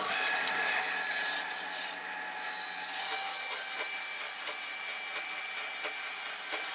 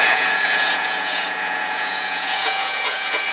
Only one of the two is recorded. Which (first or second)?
first